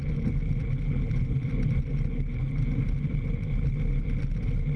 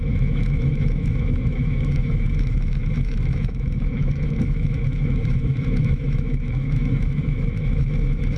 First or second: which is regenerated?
second